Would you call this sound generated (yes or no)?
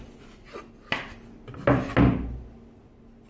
no